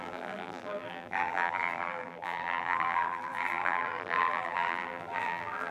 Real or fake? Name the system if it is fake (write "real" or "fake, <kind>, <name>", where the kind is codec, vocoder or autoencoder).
fake, vocoder, BigVGAN v2